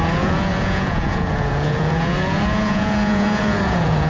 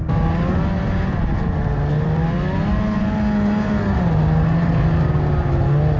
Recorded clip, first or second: second